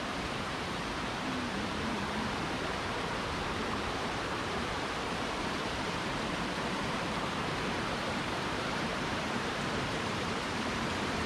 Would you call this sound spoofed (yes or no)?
yes